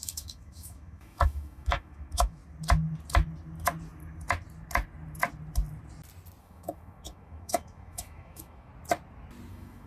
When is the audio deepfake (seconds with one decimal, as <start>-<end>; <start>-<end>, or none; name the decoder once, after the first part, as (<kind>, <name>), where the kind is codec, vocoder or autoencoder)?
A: 0.0-2.4 (autoencoder, DAC-VAE); 6.4-8.7; 9.5-9.9